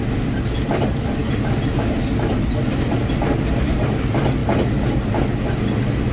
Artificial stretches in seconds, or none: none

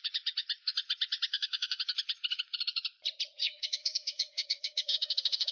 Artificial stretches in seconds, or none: 1.3-1.8 (autoencoder, DAC-VAE); 3.4-5.5

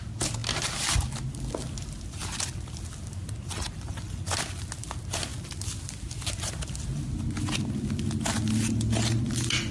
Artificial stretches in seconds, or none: none

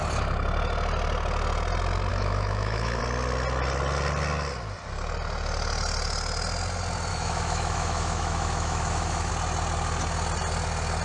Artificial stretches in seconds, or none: 2.1-3.0 (autoencoder, DAC-VAE); 7.1-9.3

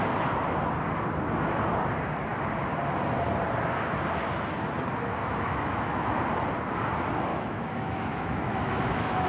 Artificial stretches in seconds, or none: 5.2-6.2 (autoencoder, DAC-VAE); 7.3-9.3

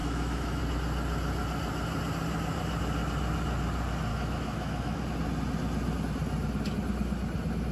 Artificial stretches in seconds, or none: 0.0-0.6 (autoencoder, DAC-VAE); 4.1-5.0